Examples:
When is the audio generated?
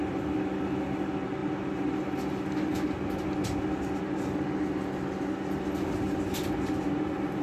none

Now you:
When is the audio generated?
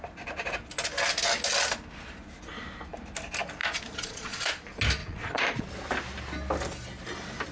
3.6-4.5 (vocoder, Vocos); 5.0-5.7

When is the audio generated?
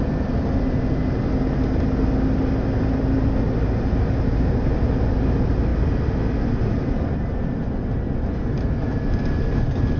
none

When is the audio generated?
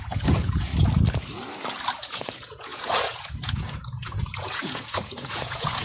0.0-0.7 (vocoder, Vocos); 2.0-5.8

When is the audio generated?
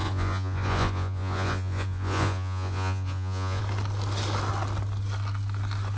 0.0-3.6 (vocoder, Vocos)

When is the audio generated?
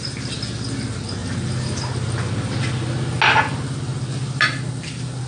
none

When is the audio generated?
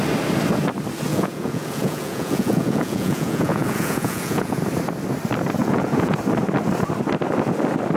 1.1-4.6 (vocoder, Vocos); 5.6-6.2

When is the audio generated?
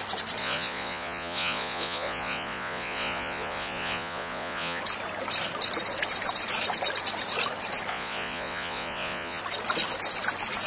0.4-4.8 (vocoder, Vocos); 7.9-9.4